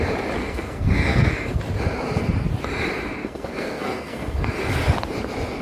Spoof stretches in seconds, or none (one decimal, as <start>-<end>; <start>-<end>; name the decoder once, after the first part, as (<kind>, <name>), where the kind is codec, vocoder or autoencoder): 0.4-1.6 (codec, SNAC); 3.2-4.5